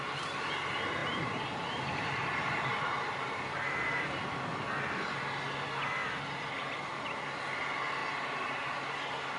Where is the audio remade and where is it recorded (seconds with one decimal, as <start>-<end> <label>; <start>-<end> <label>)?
0.0-1.0 recorded; 1.0-4.2 remade; 4.2-8.0 recorded; 8.0-9.0 remade; 9.0-9.4 recorded